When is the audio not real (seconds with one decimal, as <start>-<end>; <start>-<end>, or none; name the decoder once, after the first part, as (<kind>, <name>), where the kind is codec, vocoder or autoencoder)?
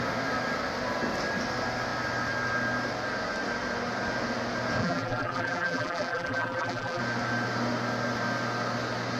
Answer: 4.8-7.0 (vocoder, BigVGAN v2)